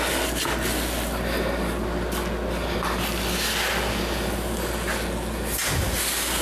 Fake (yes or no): no